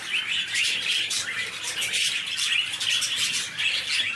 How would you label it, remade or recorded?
recorded